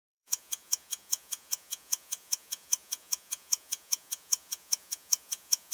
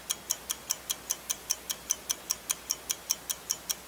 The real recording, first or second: second